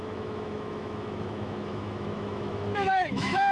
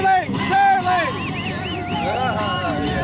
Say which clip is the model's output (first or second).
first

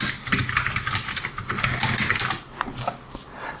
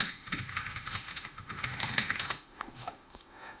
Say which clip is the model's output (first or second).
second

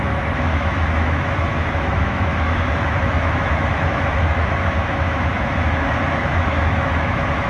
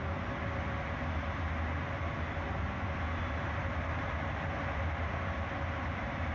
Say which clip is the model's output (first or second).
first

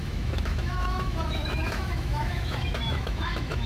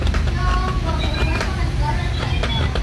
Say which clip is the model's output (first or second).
first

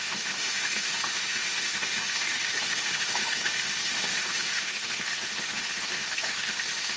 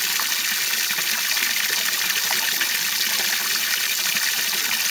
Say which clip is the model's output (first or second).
first